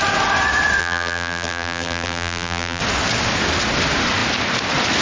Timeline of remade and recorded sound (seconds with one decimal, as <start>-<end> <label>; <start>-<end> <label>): 0.0-0.8 recorded; 0.8-2.8 remade; 2.8-5.0 recorded